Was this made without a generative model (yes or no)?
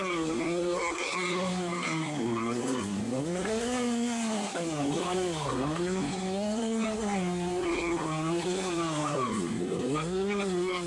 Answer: no